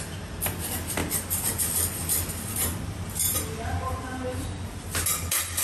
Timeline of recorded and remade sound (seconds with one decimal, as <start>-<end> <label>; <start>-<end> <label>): 0.0-5.6 recorded

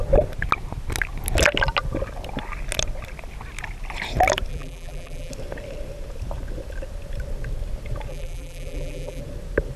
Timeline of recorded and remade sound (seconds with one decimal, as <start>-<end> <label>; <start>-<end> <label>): 0.0-4.5 recorded; 4.5-5.3 remade; 5.3-8.1 recorded; 8.1-9.2 remade; 9.2-9.8 recorded

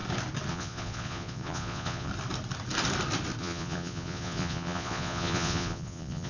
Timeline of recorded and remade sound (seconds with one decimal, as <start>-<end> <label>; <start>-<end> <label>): 0.0-0.5 recorded; 0.5-2.1 remade; 2.1-3.4 recorded; 3.4-6.3 remade

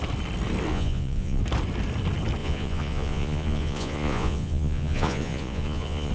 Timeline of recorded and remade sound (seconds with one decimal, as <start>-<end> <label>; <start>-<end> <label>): 0.0-0.7 recorded; 0.7-1.4 remade; 1.4-2.4 recorded; 2.4-6.1 remade

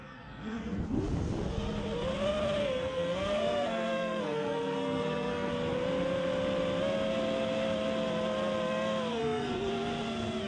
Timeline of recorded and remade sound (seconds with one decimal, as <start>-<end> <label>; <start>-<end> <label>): 0.0-1.0 remade; 1.0-2.6 recorded; 2.6-5.5 remade; 5.5-9.1 recorded; 9.1-9.7 remade; 9.7-10.5 recorded

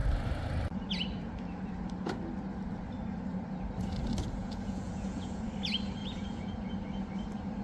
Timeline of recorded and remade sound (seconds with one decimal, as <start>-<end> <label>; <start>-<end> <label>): 0.0-4.4 recorded; 4.4-5.5 remade; 5.5-6.0 recorded; 6.0-6.7 remade; 6.7-7.6 recorded